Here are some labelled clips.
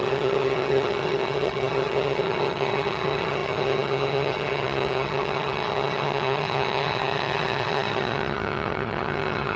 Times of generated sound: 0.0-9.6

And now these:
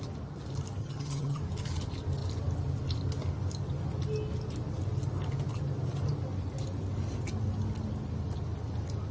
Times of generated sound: 0.8-1.4

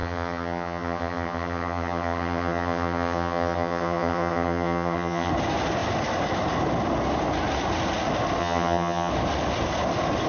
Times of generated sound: 0.0-5.3; 8.4-9.1

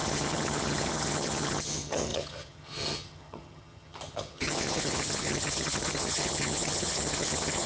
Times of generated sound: 0.0-7.7

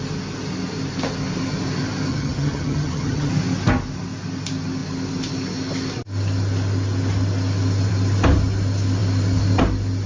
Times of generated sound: 2.1-3.3

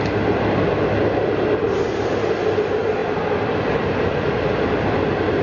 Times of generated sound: none